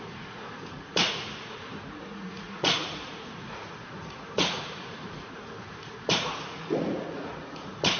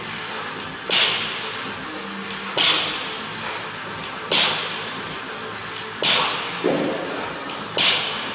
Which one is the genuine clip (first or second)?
second